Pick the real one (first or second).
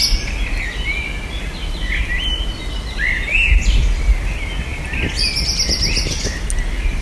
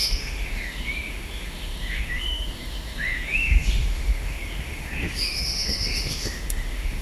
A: first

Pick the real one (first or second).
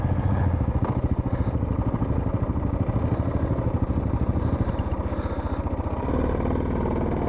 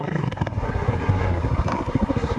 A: first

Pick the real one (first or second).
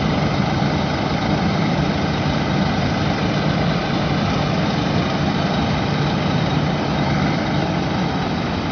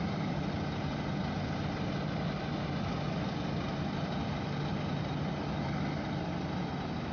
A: second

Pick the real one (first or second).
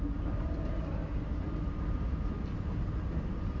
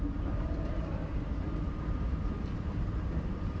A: first